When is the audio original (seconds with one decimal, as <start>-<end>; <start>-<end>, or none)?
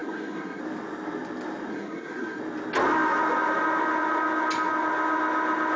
0.6-1.7; 2.4-5.8